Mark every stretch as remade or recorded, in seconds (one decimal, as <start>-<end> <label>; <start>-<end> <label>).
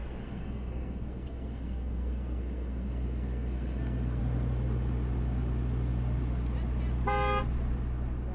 0.0-4.2 remade; 4.2-8.3 recorded